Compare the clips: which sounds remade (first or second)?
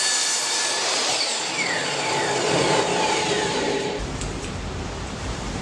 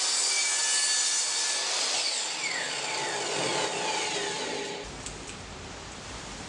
first